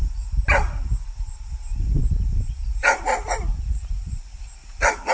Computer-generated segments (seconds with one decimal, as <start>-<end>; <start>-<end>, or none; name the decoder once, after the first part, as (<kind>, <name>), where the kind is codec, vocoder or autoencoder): none